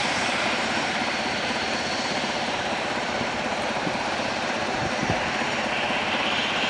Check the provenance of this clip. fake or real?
fake